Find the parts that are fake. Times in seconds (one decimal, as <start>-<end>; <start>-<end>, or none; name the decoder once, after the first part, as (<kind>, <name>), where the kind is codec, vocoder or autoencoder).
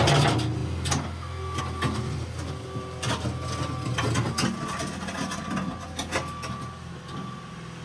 none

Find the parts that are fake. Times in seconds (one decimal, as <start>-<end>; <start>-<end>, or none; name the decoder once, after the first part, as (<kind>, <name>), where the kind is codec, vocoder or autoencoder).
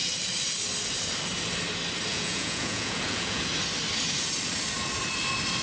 2.1-3.4 (vocoder, Vocos)